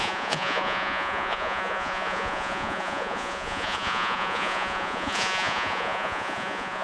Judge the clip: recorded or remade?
remade